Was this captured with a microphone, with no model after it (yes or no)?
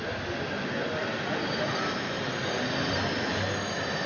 yes